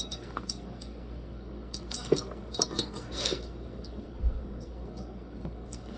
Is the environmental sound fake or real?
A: fake